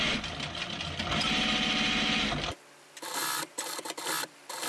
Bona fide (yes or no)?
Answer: yes